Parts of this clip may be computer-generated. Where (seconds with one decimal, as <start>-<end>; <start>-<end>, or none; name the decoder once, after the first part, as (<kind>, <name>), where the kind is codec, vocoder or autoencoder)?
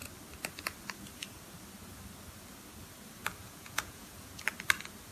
3.4-4.3 (vocoder, Vocos)